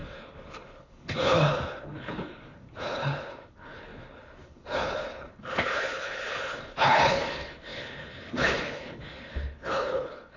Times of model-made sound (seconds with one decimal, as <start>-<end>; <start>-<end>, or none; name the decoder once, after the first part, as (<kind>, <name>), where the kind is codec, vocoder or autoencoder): 0.0-10.4 (codec, HILCodec)